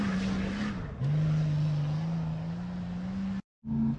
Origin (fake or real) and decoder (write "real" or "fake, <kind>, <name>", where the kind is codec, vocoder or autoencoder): real